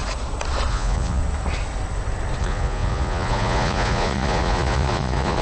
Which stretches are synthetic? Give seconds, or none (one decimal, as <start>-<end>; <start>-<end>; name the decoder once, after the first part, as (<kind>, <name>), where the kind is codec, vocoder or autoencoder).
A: 0.7-1.2 (vocoder, Vocos); 2.4-5.4